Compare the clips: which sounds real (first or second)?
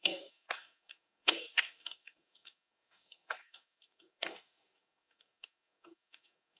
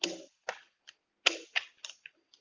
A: second